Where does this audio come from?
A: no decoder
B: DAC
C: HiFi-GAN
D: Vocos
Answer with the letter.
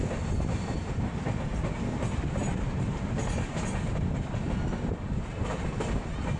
A